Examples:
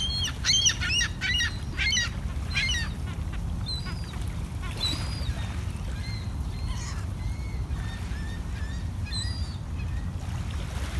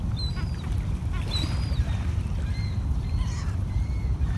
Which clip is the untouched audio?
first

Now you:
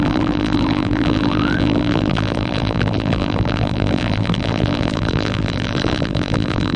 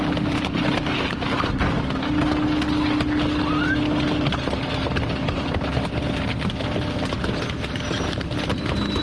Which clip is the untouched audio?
second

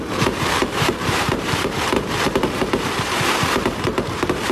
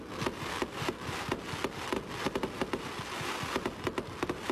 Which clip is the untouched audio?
second